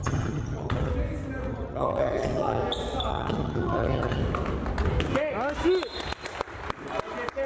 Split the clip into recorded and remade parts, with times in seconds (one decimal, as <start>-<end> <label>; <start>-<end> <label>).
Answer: 0.0-0.9 remade; 0.9-1.5 recorded; 1.5-2.6 remade; 2.6-3.1 recorded; 3.1-4.2 remade; 4.2-7.5 recorded